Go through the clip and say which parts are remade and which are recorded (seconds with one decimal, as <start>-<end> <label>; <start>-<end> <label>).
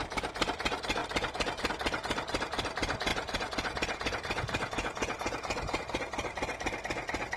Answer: 0.0-3.1 recorded; 3.1-5.8 remade; 5.8-7.4 recorded